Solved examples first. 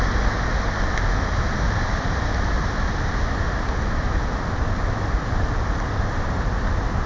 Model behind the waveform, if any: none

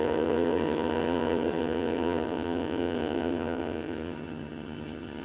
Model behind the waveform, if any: vocoder, HiFi-GAN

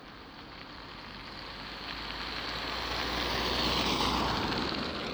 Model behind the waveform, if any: none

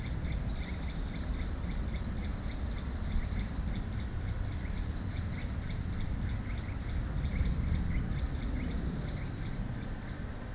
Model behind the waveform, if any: none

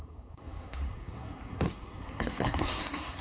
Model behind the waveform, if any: codec, SNAC